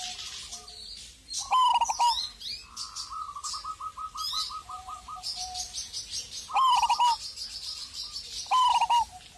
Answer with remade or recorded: recorded